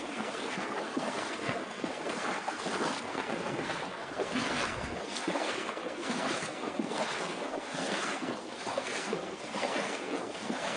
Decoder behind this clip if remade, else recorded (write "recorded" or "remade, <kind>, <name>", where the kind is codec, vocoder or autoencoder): remade, codec, SNAC